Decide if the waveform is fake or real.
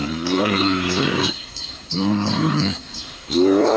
fake